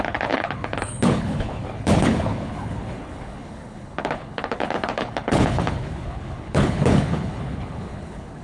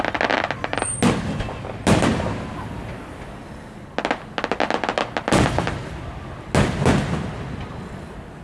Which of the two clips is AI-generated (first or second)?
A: first